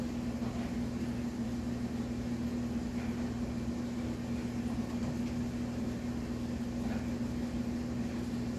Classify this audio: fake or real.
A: real